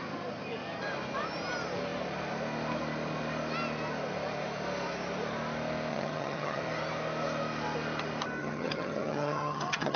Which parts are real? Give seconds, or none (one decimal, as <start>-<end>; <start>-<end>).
0.0-5.9; 6.6-8.4